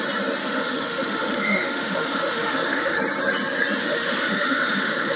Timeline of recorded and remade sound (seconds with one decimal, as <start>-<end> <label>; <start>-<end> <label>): 0.0-0.4 recorded; 0.4-3.0 remade; 3.0-3.8 recorded; 3.8-5.2 remade